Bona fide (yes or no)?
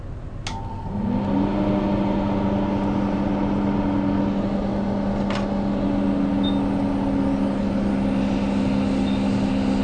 yes